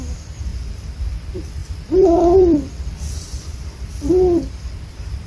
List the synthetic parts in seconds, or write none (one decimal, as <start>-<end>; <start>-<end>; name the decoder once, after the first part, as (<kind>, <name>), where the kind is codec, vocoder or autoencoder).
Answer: 0.0-0.5 (vocoder, BigVGAN v2); 1.0-5.3